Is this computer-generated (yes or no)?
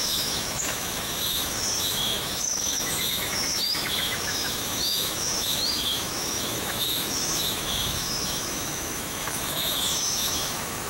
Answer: yes